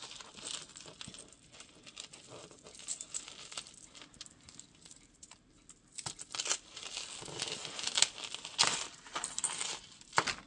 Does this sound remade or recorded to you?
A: recorded